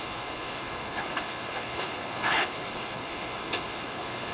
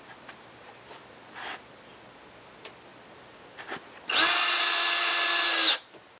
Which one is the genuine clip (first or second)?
second